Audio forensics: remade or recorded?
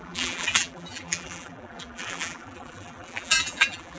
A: remade